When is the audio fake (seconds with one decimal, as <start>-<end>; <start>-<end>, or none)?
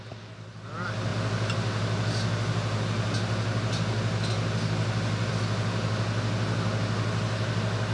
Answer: none